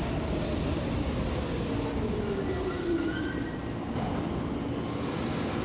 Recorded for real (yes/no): yes